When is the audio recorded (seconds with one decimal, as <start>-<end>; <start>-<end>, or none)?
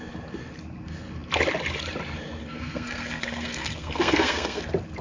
0.0-2.4; 4.6-5.0